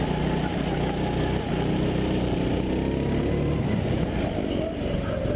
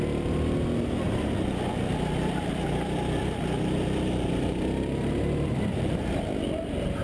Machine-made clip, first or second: second